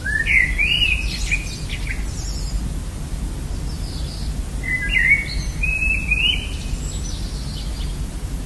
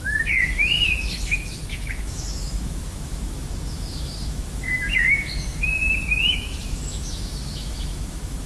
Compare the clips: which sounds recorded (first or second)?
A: first